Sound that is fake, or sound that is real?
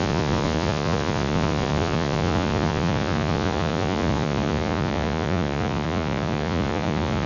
fake